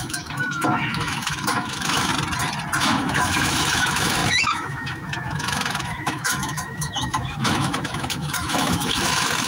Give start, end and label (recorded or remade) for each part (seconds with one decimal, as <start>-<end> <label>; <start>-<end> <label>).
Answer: 0.0-2.1 remade; 2.1-2.8 recorded; 2.8-9.5 remade